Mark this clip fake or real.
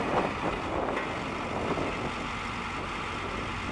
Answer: real